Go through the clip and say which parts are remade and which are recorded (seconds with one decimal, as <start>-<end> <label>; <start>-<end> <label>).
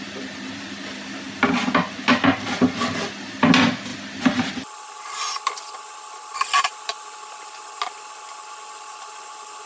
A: 0.0-9.7 recorded